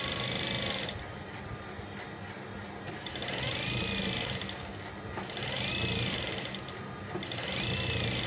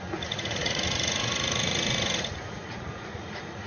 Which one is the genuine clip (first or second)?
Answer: first